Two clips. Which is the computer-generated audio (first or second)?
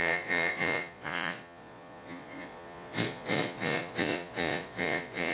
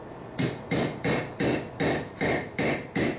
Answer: first